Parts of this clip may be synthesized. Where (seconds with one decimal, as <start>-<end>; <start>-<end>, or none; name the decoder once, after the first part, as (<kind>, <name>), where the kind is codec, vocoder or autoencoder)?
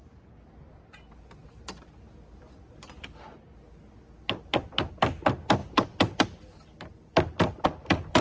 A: none